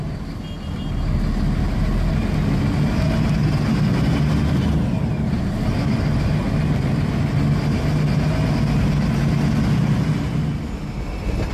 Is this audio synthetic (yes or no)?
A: no